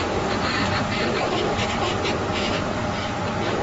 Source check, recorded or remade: recorded